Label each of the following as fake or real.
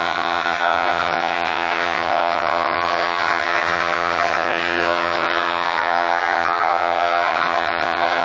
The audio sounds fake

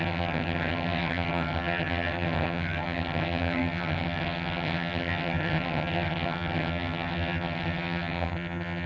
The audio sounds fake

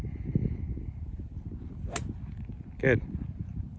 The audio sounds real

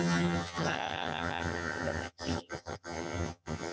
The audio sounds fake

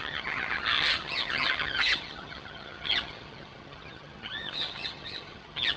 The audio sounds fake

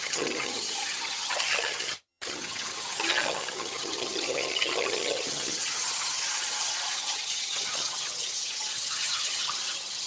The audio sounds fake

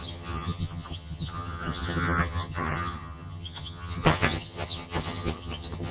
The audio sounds fake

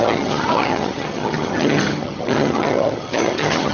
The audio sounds fake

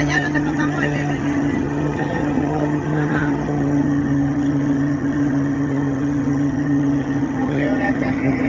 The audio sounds fake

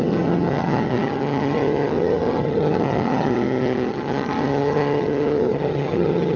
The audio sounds fake